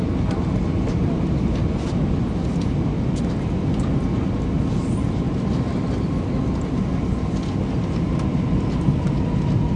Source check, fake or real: real